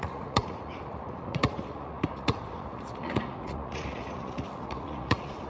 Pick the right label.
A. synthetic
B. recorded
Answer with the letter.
A